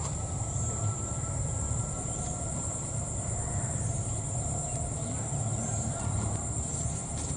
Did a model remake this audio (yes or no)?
yes